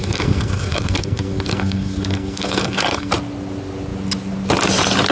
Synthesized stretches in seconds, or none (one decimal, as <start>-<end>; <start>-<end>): 0.0-3.1